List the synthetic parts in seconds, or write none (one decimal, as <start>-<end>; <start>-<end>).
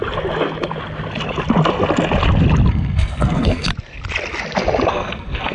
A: 2.7-3.7; 4.9-5.5